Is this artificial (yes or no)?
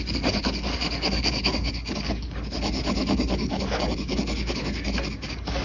yes